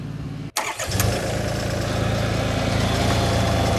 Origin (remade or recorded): recorded